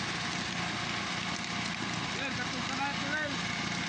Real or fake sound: real